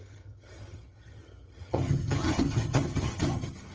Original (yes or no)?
no